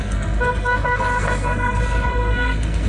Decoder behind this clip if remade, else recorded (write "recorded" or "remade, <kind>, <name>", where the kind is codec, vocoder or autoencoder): remade, codec, SNAC